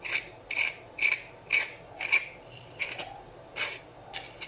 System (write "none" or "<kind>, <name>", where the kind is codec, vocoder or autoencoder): none